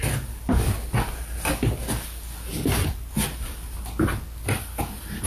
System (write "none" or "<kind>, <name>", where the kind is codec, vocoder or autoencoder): none